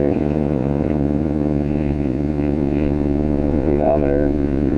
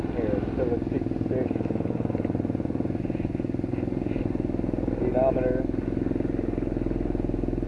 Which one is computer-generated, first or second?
first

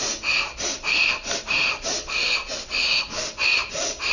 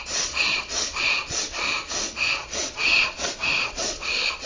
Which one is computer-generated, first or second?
second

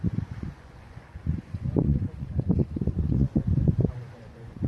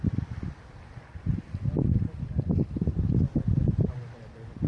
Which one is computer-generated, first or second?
first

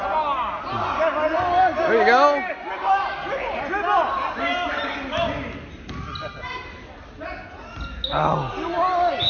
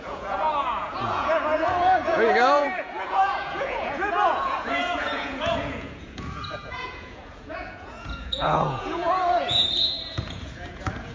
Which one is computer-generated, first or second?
second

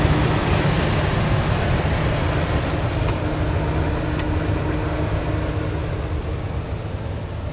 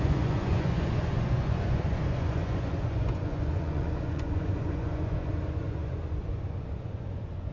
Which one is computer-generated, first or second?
second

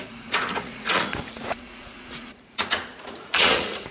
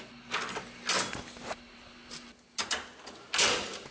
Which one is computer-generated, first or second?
first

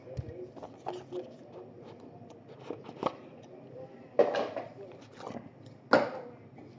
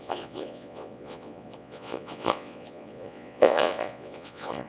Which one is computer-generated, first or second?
second